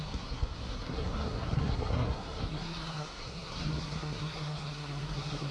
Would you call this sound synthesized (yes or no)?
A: yes